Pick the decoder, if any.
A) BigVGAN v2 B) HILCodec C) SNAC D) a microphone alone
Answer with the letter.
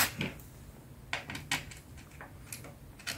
D